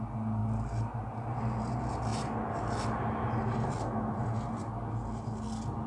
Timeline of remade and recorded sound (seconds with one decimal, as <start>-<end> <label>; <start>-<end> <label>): 0.0-5.9 recorded